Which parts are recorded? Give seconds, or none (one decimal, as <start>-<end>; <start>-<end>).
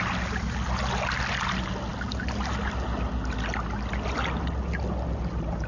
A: 0.0-5.7